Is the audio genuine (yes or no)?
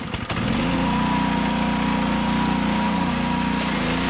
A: yes